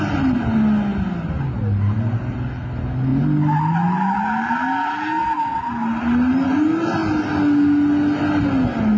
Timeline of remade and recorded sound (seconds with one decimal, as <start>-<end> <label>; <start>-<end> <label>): 0.0-9.0 recorded